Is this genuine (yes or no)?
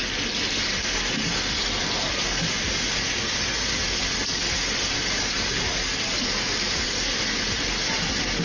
yes